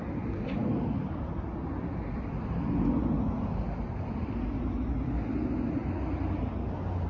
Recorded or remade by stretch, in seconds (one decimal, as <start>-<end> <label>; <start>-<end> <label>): 0.0-7.1 recorded